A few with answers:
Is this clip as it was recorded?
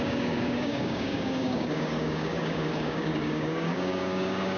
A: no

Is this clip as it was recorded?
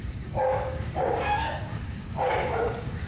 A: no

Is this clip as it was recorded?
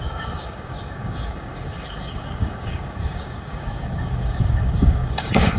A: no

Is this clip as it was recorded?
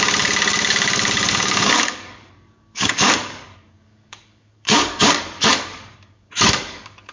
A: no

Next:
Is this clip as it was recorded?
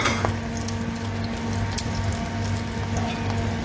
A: yes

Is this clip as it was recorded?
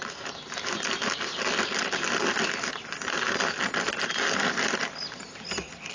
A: yes